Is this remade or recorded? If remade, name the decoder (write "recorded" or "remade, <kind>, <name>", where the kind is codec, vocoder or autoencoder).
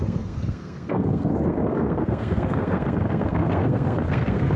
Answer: remade, codec, SNAC